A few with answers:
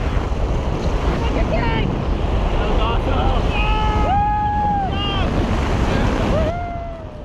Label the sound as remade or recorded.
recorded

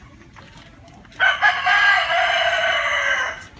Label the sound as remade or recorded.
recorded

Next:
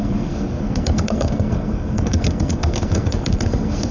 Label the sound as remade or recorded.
remade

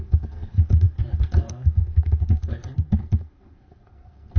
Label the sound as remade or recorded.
remade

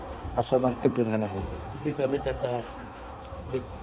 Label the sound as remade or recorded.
remade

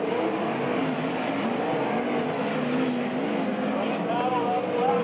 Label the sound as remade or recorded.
recorded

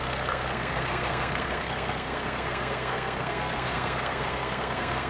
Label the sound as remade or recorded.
remade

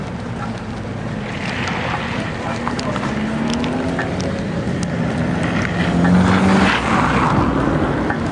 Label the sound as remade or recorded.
recorded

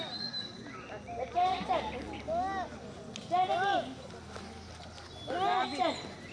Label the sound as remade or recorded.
recorded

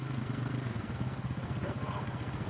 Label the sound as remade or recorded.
remade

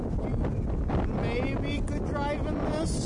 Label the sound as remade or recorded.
recorded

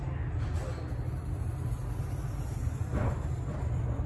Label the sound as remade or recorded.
recorded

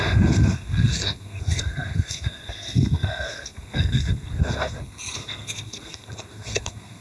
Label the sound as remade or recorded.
remade